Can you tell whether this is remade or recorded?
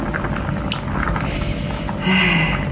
recorded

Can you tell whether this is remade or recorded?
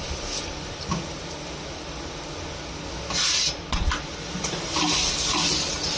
recorded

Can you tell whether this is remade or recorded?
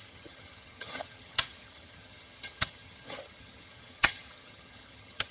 remade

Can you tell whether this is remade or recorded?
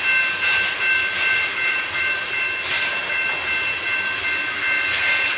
recorded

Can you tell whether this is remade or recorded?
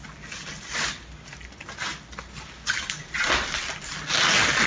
recorded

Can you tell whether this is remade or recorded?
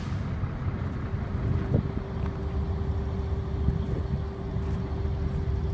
recorded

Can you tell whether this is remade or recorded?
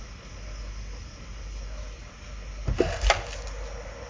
recorded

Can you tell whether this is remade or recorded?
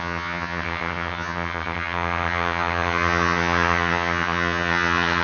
remade